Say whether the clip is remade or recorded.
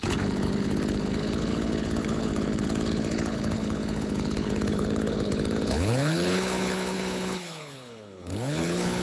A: remade